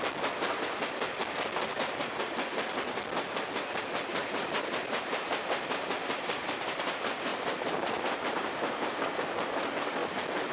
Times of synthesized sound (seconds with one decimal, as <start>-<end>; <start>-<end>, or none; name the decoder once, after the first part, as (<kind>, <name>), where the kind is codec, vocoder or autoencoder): 1.7-2.2 (vocoder, BigVGAN v2); 4.1-6.5; 7.3-9.1